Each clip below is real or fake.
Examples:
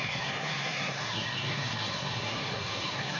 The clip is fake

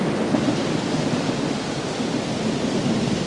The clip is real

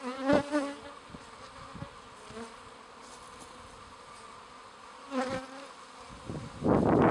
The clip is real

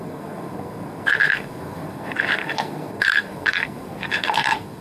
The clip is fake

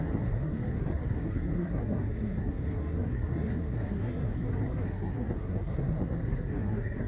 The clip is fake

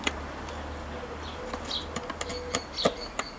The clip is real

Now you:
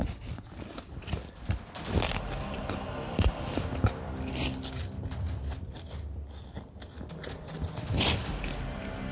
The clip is real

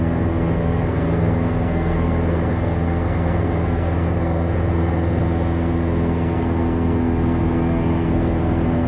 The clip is fake